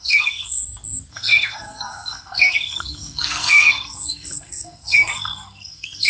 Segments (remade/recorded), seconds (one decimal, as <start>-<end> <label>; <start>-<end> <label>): 0.0-0.6 remade; 0.6-1.1 recorded; 1.1-6.1 remade